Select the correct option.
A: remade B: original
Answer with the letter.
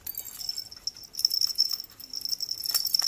B